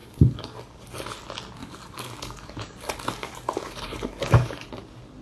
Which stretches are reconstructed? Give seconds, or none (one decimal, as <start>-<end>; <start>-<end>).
0.0-0.8; 1.6-4.7